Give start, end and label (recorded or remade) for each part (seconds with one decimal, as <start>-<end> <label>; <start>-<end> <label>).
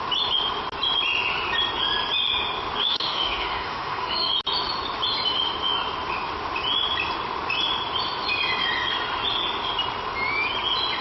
0.0-2.8 recorded; 2.8-4.3 remade; 4.3-11.0 recorded